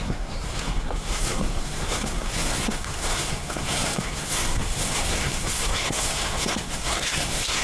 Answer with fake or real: fake